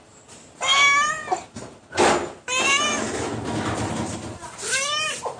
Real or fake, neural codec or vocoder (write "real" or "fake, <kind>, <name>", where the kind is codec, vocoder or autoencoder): real